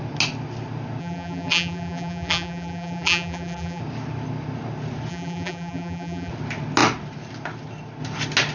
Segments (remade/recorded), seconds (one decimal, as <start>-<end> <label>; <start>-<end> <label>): 0.0-1.0 recorded; 1.0-3.8 remade; 3.8-5.1 recorded; 5.1-6.3 remade; 6.3-8.5 recorded